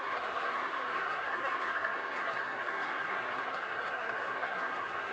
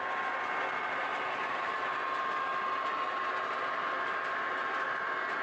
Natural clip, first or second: second